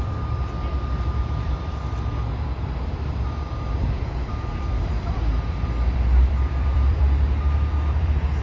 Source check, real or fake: fake